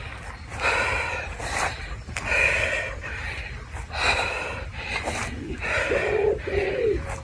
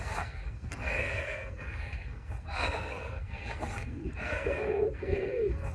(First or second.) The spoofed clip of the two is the second